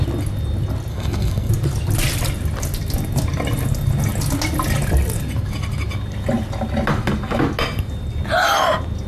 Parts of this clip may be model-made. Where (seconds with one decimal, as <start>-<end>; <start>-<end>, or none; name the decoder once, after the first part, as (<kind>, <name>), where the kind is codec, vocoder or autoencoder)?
0.9-1.5 (codec, SNAC)